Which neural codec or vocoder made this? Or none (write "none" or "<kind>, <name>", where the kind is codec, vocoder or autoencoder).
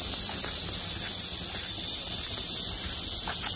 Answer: none